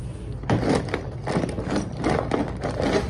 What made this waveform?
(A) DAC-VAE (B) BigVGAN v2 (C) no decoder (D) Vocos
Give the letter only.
C